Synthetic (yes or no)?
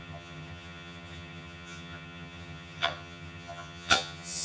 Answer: yes